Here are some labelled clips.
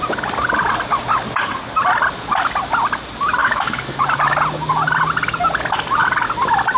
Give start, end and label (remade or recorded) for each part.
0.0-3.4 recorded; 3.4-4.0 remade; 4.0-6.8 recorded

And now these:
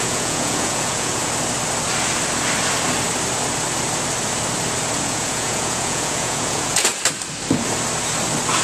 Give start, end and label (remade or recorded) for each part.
0.0-1.2 remade; 1.2-5.0 recorded; 5.0-6.9 remade; 6.9-8.6 recorded